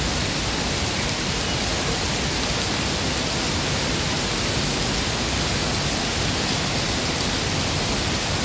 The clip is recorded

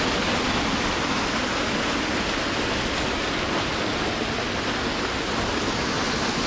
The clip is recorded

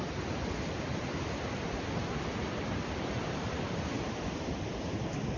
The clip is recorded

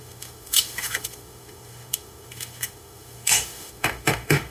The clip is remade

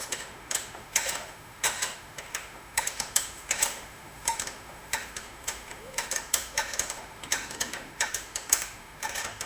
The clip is remade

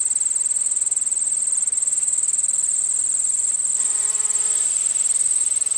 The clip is recorded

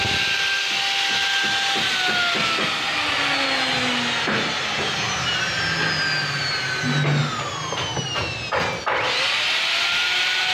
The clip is recorded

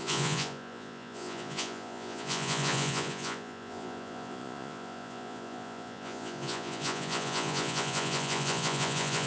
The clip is remade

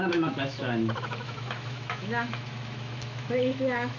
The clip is remade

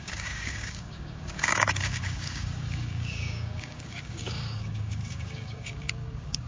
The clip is remade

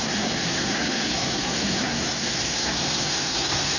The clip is remade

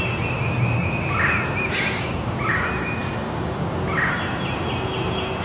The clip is recorded